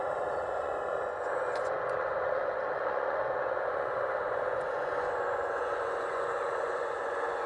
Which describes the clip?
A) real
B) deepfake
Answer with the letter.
B